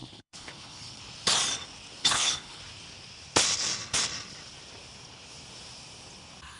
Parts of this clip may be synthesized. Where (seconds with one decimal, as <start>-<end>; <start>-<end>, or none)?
0.0-1.0; 2.0-2.6